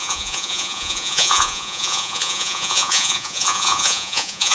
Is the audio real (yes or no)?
no